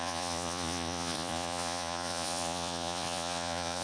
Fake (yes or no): yes